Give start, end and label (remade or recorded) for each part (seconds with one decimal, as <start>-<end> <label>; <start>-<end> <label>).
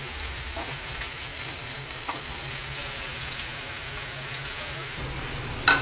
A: 0.0-1.3 recorded; 1.3-2.5 remade; 2.5-5.8 recorded